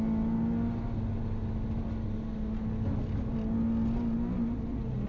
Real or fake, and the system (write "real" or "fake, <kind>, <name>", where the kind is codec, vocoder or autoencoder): real